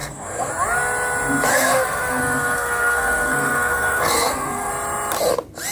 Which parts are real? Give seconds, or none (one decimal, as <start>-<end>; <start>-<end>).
0.5-1.5; 4.7-5.7